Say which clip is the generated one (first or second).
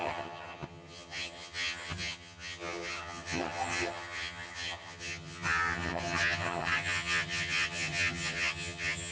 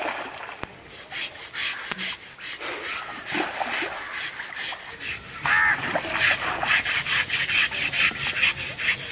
first